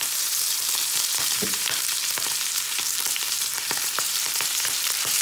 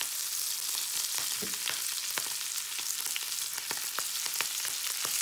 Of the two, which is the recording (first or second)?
second